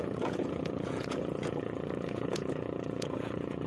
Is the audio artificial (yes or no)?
yes